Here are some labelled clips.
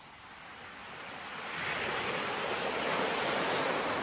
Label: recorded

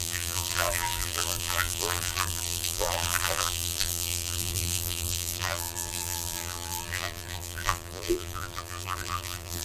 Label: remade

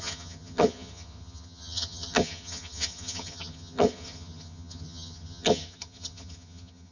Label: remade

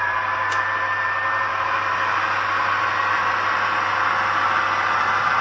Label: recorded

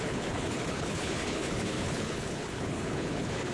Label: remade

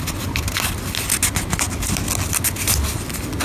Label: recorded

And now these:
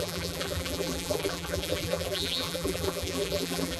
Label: remade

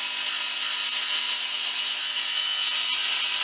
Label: recorded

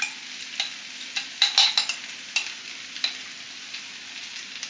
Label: recorded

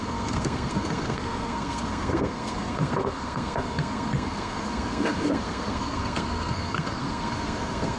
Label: remade